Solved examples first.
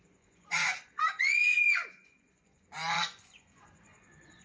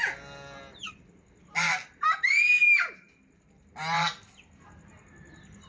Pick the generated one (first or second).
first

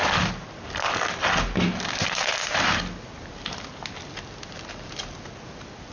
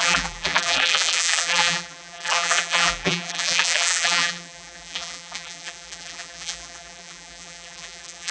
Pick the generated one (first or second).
second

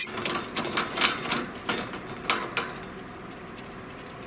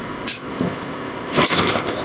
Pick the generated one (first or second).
second